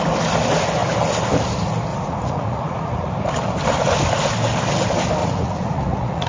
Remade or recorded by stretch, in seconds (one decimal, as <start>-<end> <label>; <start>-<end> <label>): 0.0-1.9 recorded; 1.9-3.1 remade; 3.1-5.2 recorded; 5.2-6.3 remade